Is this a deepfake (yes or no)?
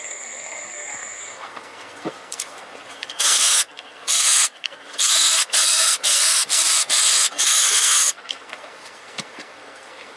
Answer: yes